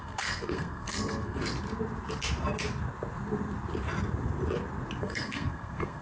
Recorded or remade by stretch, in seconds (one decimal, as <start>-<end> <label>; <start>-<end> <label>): 0.0-1.4 remade; 1.4-5.0 recorded; 5.0-6.0 remade